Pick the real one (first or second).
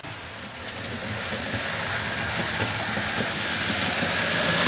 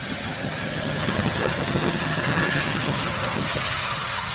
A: first